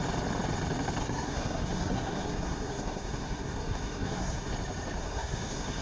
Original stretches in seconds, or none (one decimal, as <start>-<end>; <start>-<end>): 0.0-1.0; 4.5-5.0